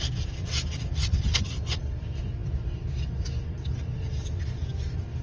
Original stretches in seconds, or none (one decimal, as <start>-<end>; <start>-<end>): 0.0-5.2